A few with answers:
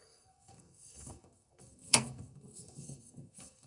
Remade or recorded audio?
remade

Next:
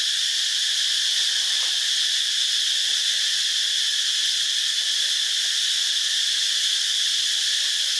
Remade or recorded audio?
recorded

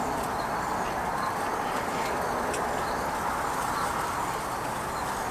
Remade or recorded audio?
recorded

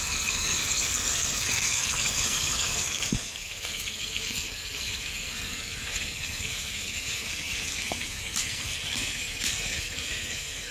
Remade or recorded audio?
remade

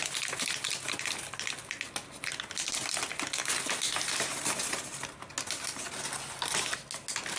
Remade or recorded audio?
recorded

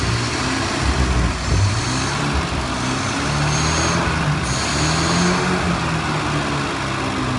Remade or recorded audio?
recorded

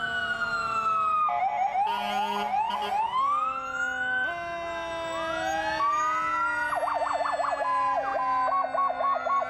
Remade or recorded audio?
recorded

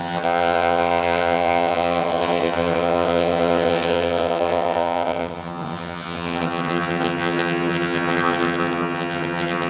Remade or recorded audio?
remade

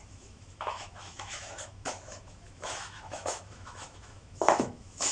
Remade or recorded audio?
remade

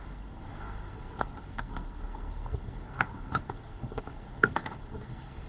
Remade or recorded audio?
remade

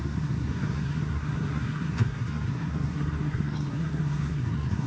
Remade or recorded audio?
remade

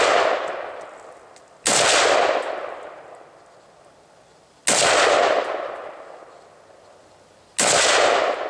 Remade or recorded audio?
recorded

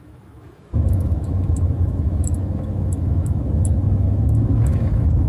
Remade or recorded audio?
remade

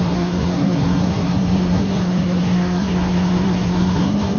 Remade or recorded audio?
remade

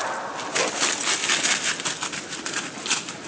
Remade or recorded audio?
recorded